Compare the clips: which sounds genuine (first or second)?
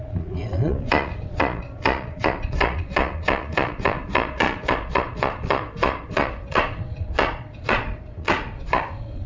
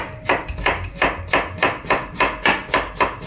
second